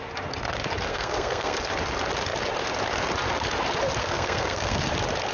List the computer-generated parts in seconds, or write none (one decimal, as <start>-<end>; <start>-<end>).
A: 0.9-1.6; 4.0-4.8